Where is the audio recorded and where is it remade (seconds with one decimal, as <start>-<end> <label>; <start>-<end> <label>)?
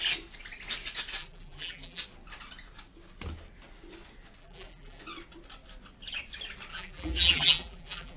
0.0-1.2 recorded; 1.2-2.0 remade; 2.0-4.4 recorded; 4.4-5.0 remade; 5.0-6.7 recorded; 6.7-8.2 remade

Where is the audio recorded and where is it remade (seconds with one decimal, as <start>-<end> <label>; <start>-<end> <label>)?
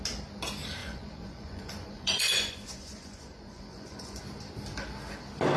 0.0-0.8 recorded; 0.8-4.2 remade; 4.2-5.6 recorded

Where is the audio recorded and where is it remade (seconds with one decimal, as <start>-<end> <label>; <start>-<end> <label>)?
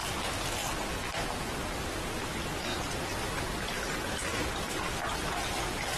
0.0-6.0 recorded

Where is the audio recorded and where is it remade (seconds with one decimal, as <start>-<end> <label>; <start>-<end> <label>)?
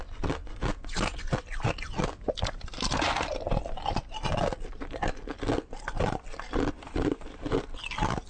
0.0-8.3 recorded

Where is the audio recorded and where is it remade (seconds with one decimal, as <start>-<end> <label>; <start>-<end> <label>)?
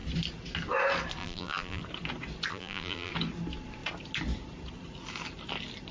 0.0-1.2 recorded; 1.2-1.8 remade; 1.8-2.5 recorded; 2.5-3.1 remade; 3.1-5.9 recorded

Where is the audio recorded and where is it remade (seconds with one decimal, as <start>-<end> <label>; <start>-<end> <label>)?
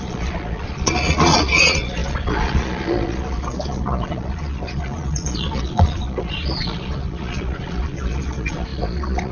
0.0-9.3 remade